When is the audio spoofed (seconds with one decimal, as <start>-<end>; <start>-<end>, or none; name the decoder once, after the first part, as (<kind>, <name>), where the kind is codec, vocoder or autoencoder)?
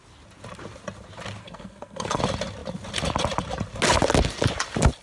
1.4-2.2 (codec, SNAC)